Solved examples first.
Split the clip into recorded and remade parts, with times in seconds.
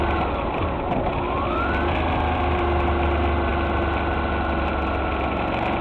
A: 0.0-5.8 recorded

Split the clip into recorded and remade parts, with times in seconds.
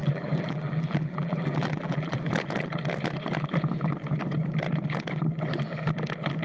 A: 0.0-2.3 remade; 2.3-6.4 recorded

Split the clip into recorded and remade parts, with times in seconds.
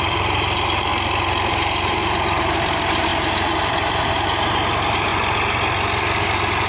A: 0.0-0.9 remade; 0.9-1.5 recorded; 1.5-5.1 remade; 5.1-6.2 recorded; 6.2-6.7 remade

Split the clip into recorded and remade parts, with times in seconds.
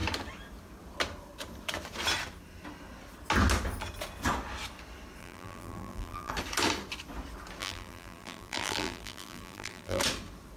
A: 0.0-5.2 recorded; 5.2-6.3 remade; 6.3-7.6 recorded; 7.6-10.0 remade; 10.0-10.6 recorded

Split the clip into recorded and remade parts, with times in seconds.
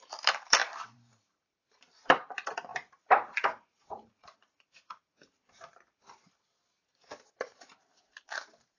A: 0.0-8.8 remade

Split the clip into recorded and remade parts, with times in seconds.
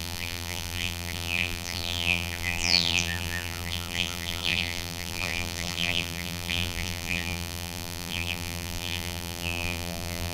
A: 0.0-10.3 remade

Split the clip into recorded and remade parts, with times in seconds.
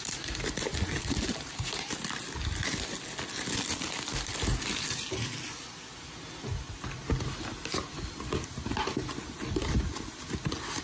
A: 0.0-0.9 recorded; 0.9-1.8 remade; 1.8-10.8 recorded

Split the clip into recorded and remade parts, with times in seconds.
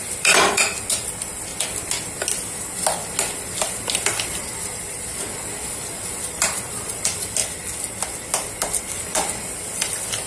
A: 0.0-1.5 remade; 1.5-4.4 recorded; 4.4-7.4 remade; 7.4-8.9 recorded; 8.9-10.3 remade